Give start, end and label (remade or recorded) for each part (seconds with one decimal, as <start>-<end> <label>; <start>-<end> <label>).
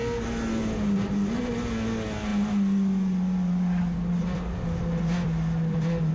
0.0-6.1 recorded